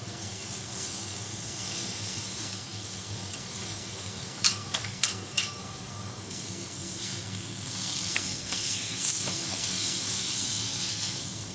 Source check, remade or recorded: remade